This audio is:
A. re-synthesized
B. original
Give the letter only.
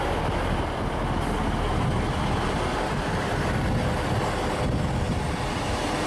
B